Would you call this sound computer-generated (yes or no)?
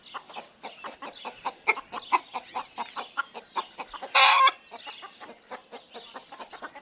no